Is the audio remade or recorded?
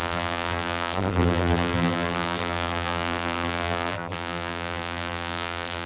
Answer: remade